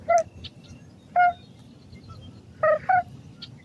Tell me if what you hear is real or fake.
real